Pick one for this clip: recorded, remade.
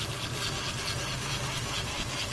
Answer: remade